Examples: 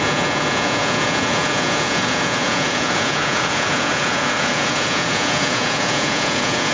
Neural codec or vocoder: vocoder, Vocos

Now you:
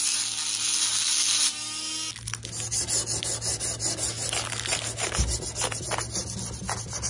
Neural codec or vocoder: none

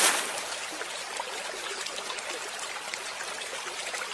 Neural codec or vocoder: none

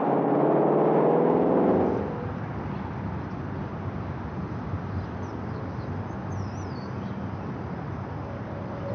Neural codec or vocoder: none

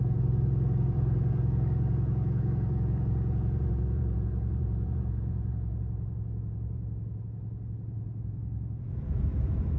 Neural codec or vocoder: vocoder, Vocos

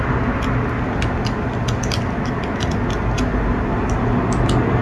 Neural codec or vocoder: none